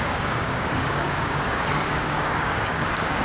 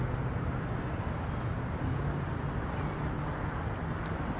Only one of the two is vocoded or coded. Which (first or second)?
first